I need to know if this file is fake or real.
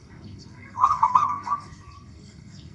fake